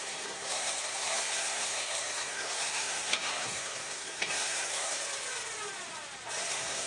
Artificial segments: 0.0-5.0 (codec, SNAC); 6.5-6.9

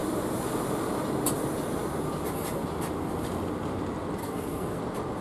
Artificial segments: 4.2-4.8 (codec, SNAC)